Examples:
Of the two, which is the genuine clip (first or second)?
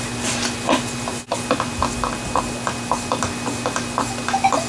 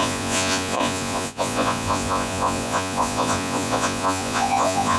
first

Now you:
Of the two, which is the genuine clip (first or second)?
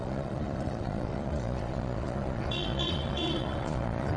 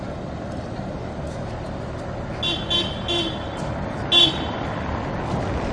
second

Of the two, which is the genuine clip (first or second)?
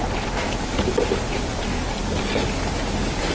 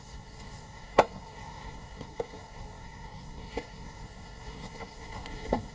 first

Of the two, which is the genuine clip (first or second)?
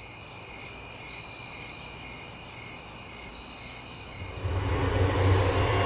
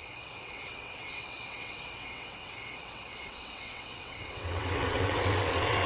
first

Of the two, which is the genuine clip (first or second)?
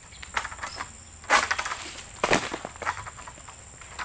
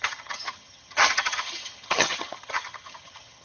first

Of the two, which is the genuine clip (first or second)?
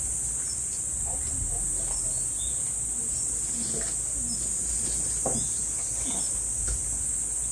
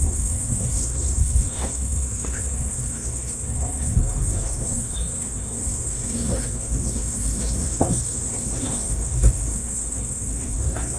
first